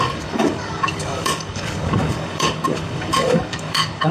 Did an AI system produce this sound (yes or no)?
yes